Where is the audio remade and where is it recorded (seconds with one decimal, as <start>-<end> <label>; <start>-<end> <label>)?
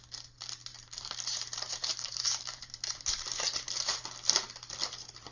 0.0-0.7 recorded; 0.7-3.9 remade; 3.9-5.3 recorded